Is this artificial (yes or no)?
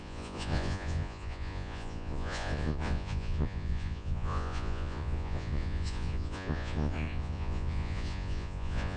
yes